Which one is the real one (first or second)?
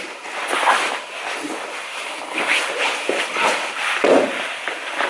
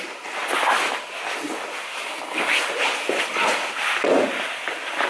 second